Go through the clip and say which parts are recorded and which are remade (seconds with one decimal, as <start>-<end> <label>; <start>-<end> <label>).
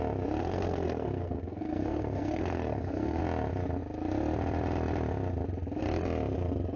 0.0-0.4 recorded; 0.4-3.2 remade; 3.2-6.8 recorded